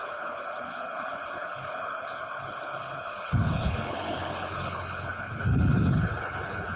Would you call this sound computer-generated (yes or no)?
yes